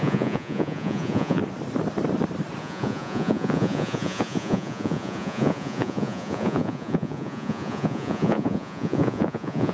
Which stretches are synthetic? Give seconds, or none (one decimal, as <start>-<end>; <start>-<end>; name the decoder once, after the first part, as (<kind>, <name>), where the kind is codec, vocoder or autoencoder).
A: 0.0-1.4 (vocoder, Vocos); 2.6-9.7